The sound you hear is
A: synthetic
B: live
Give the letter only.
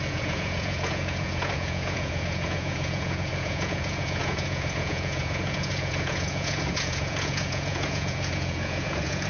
A